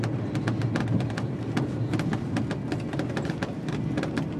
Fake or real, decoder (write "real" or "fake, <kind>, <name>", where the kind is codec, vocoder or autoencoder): real